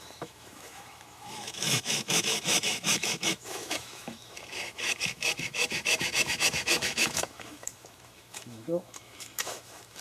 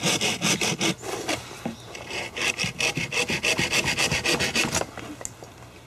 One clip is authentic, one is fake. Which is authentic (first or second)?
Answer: second